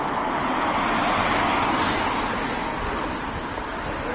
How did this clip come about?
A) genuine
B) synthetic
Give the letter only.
A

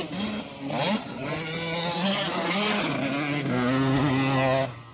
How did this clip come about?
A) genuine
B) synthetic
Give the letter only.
A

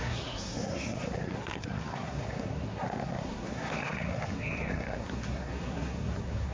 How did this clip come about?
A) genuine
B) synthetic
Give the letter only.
B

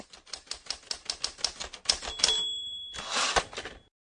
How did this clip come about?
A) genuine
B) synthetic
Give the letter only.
A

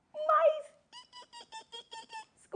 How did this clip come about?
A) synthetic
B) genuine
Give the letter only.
B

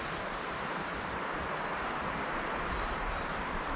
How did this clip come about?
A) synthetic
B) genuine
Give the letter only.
A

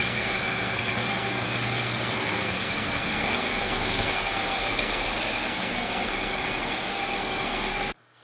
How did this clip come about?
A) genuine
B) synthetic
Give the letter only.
B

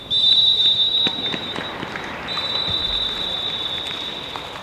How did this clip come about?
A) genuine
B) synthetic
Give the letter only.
A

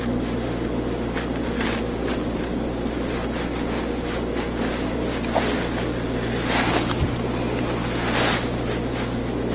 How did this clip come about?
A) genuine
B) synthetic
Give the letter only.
A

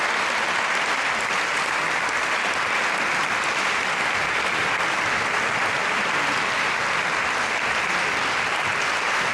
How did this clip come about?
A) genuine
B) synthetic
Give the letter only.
A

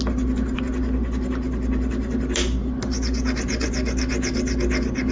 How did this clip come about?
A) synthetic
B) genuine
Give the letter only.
B